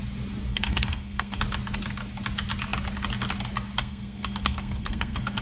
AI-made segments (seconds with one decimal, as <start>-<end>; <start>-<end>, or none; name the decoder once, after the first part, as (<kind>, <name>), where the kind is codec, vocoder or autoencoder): 0.5-1.4 (codec, SNAC); 3.8-5.4

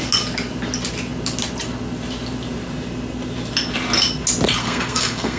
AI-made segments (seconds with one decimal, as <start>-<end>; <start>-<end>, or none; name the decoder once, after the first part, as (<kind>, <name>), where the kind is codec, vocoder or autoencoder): 4.6-5.4 (codec, SNAC)

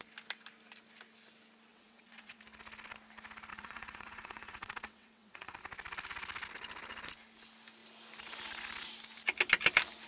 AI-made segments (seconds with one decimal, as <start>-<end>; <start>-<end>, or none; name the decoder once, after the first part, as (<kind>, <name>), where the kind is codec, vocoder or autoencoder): 1.7-2.4 (vocoder, WaveNeXt); 3.5-5.6

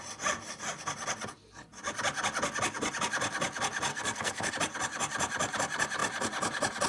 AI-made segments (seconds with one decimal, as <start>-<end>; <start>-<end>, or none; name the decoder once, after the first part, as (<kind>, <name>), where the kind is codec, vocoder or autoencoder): 3.9-4.5 (codec, SNAC)

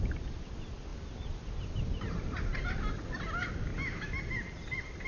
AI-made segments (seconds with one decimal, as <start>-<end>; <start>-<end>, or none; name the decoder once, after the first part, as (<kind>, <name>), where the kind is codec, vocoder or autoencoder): 3.7-4.2 (autoencoder, DAC-VAE)